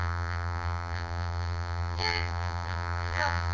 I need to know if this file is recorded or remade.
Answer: remade